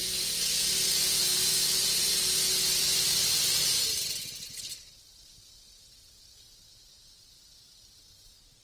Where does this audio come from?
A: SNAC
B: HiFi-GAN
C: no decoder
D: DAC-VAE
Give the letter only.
C